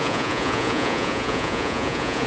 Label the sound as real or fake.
fake